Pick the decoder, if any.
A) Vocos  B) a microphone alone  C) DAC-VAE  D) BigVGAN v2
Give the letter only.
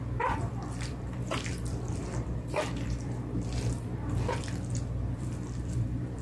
D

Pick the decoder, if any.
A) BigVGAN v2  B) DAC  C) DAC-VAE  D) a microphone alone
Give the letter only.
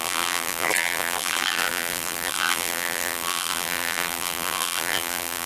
A